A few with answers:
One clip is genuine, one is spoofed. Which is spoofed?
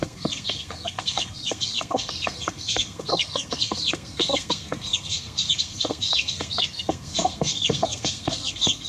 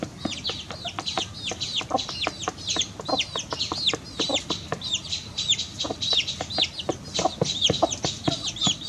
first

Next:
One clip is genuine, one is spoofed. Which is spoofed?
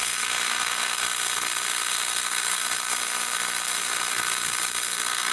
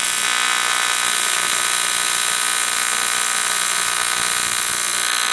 first